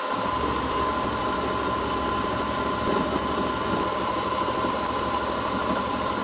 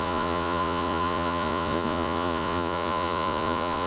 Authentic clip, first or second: first